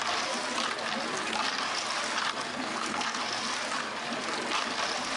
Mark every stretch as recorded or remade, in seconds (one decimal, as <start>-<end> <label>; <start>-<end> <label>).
0.0-2.5 recorded; 2.5-3.2 remade; 3.2-5.2 recorded